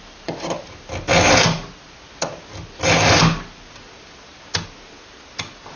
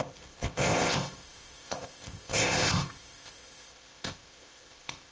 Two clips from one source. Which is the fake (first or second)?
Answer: second